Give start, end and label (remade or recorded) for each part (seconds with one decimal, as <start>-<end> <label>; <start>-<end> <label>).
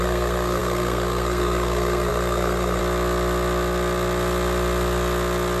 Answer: 0.0-2.8 remade; 2.8-5.6 recorded